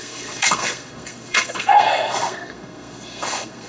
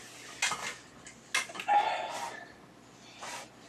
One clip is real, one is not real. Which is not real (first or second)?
first